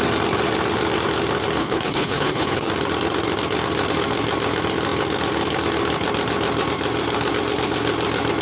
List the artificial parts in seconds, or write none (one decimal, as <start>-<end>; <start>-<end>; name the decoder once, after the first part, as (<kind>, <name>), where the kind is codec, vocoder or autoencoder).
1.6-2.7 (codec, HILCodec)

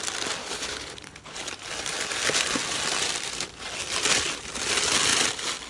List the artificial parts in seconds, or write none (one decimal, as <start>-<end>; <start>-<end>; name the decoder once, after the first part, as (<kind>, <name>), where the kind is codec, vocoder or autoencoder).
0.4-1.5 (codec, HILCodec)

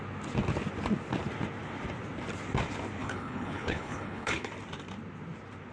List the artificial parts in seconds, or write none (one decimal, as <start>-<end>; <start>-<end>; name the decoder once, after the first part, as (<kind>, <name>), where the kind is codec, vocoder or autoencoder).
3.0-4.5 (codec, HILCodec)

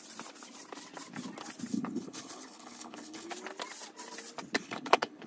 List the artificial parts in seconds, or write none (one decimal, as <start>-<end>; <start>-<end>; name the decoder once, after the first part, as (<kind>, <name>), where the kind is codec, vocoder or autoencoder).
1.7-3.3 (codec, HILCodec); 4.6-5.3

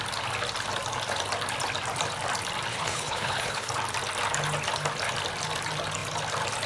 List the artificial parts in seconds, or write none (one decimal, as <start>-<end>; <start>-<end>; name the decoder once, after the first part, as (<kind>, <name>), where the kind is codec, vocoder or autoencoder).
2.7-3.7 (codec, HILCodec)

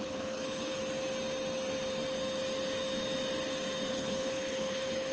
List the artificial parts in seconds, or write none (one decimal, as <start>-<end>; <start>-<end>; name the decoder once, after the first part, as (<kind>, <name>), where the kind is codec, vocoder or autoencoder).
0.0-0.8 (codec, HILCodec); 3.9-5.1

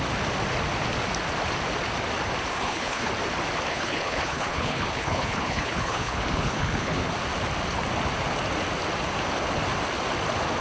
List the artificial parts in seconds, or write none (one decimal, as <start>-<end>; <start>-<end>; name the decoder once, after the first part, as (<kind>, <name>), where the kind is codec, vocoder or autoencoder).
2.5-3.1 (codec, HILCodec); 3.7-7.1